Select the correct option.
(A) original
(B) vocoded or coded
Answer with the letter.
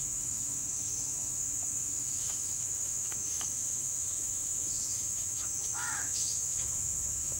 B